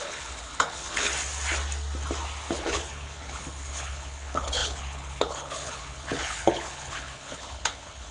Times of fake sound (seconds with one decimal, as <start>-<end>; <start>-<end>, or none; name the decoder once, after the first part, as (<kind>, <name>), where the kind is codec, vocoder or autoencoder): 0.0-1.1 (codec, HILCodec); 2.5-8.1